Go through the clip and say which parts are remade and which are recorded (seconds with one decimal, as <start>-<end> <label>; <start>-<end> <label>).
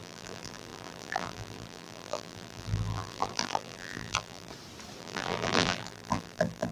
0.0-4.5 remade; 4.5-5.0 recorded; 5.0-6.7 remade